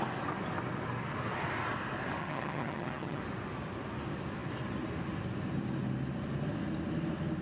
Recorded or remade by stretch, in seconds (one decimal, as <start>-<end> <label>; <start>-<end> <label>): 0.0-2.2 recorded; 2.2-3.2 remade; 3.2-7.4 recorded